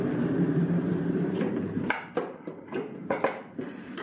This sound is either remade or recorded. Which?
remade